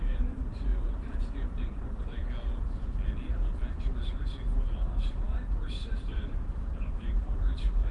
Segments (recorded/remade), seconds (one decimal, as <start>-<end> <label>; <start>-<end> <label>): 0.0-2.2 remade; 2.2-4.7 recorded; 4.7-7.9 remade